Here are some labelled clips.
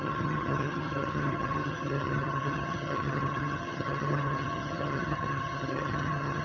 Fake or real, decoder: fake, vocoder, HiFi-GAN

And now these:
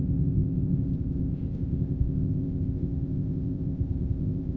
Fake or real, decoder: fake, codec, ZipCodec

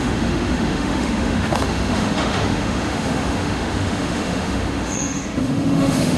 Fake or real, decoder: fake, autoencoder, DAC-VAE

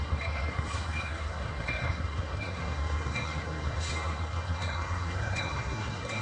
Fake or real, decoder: fake, codec, SNAC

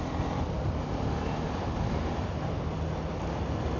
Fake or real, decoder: real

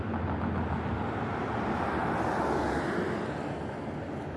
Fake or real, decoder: real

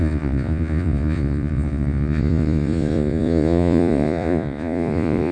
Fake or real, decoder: fake, vocoder, Vocos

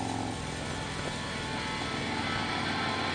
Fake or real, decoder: real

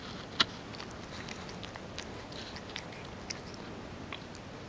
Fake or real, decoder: real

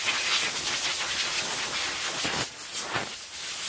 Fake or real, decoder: real